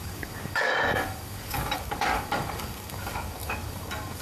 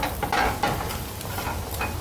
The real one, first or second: second